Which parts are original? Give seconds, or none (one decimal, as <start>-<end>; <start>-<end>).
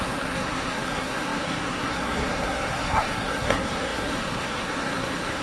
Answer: none